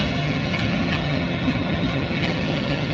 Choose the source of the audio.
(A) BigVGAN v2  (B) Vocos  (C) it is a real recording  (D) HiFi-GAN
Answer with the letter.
D